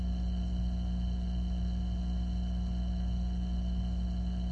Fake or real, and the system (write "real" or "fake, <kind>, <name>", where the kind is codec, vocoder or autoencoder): real